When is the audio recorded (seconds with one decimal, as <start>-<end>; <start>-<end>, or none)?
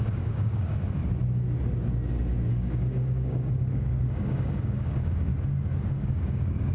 1.0-2.5; 5.3-5.9